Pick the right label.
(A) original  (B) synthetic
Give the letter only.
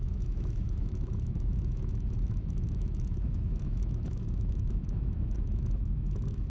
B